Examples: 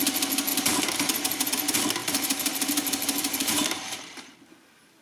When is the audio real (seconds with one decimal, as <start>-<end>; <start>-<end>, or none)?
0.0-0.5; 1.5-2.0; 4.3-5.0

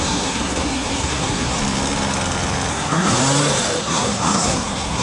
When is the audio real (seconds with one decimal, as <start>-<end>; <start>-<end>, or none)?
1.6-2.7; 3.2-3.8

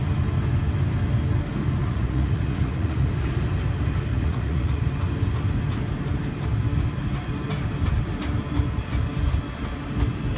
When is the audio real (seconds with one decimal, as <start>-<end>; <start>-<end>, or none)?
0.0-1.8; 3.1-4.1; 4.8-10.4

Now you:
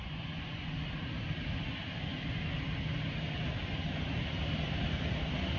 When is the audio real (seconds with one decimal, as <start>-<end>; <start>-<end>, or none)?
0.7-5.6

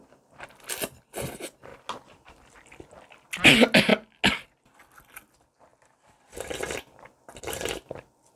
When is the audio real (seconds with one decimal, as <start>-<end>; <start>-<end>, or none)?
0.0-8.4

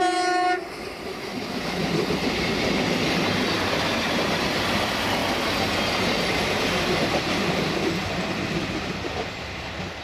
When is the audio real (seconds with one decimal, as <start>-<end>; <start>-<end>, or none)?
0.0-1.1; 1.9-10.0

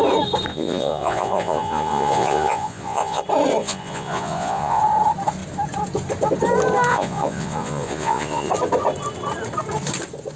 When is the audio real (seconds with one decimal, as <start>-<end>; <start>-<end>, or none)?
0.0-0.5; 3.2-3.6; 4.8-6.9; 8.5-10.4